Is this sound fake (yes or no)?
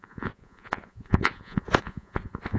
yes